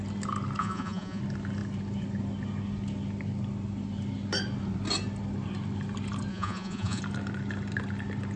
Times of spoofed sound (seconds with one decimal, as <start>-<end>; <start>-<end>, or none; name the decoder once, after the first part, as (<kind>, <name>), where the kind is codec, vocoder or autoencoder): 0.6-1.2 (vocoder, Vocos); 6.3-7.0